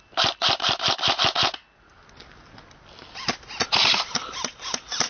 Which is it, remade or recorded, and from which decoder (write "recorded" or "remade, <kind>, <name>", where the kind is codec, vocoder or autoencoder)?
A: recorded